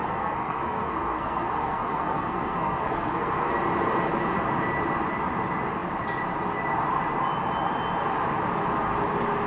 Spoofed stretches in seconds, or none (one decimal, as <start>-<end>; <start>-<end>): 0.0-3.5